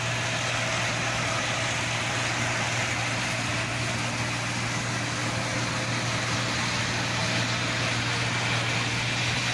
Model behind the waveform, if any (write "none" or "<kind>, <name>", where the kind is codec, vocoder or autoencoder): none